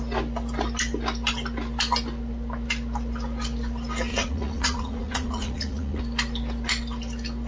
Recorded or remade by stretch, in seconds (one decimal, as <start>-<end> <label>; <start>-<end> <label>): 0.0-4.1 recorded; 4.1-6.0 remade; 6.0-7.5 recorded